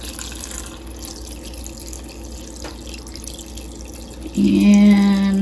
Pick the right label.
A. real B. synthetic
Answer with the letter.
A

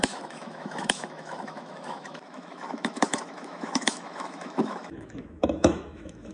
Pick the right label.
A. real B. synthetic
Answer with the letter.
B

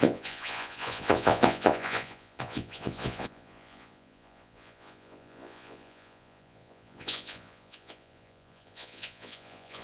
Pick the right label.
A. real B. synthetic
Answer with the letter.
B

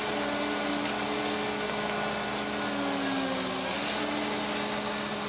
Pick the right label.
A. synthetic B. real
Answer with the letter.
B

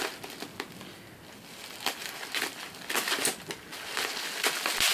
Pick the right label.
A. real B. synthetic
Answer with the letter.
A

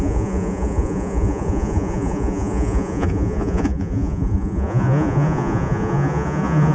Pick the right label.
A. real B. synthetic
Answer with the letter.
B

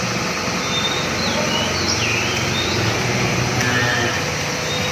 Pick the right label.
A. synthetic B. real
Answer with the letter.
B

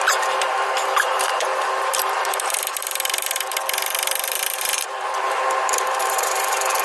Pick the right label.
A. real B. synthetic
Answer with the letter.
B